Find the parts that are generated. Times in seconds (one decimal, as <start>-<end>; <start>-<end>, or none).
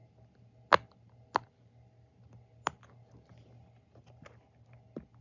none